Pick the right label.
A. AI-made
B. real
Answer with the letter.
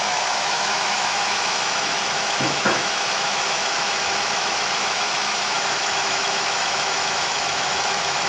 A